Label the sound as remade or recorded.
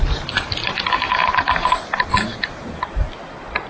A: recorded